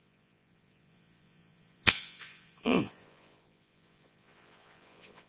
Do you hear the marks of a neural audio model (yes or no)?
yes